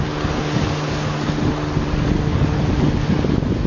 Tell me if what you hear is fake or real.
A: real